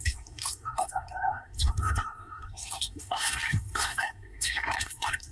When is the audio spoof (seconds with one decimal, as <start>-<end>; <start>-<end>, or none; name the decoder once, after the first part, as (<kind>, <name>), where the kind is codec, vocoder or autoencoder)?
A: 0.0-5.3 (codec, SNAC)